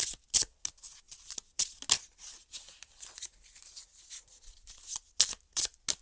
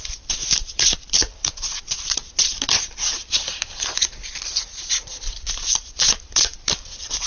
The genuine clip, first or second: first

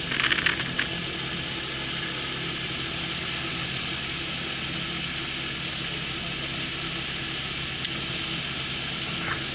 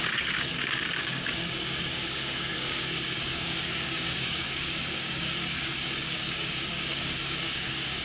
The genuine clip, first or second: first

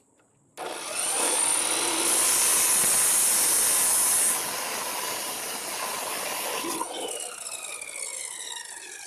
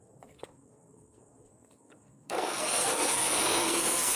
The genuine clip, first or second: first